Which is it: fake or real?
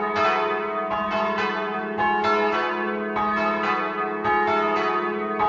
real